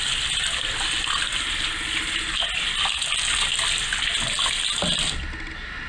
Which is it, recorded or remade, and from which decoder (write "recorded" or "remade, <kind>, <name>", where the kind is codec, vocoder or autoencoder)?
recorded